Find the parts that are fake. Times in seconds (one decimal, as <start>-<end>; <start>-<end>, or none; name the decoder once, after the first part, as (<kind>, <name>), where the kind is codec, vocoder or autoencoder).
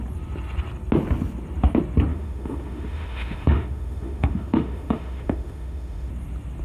2.1-6.1 (autoencoder, DAC-VAE)